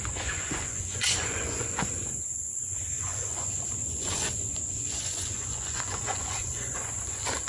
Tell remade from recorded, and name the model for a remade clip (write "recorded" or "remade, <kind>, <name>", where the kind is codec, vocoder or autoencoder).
remade, vocoder, Vocos